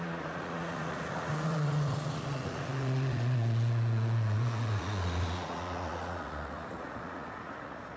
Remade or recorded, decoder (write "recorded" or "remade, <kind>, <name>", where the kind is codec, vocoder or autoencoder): remade, vocoder, Vocos